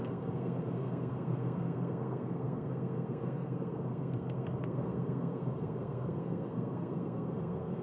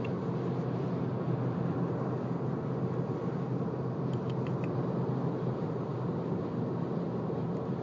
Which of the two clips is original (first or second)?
second